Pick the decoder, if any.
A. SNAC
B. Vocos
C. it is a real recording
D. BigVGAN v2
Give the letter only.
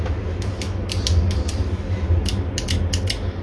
C